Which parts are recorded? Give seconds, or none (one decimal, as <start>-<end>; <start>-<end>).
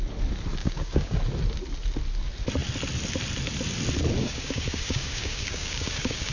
0.0-0.6; 1.2-4.2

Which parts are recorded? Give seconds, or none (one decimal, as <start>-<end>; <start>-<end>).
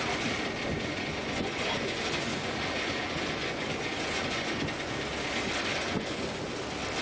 0.0-0.7; 4.9-5.7; 6.5-7.0